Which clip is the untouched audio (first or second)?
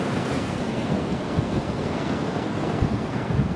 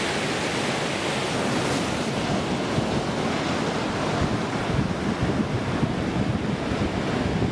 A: second